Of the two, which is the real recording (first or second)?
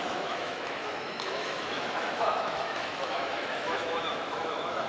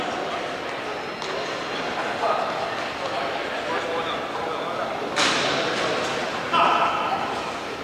second